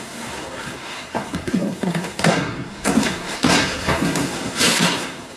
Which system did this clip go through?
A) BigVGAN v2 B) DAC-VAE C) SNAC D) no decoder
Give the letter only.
C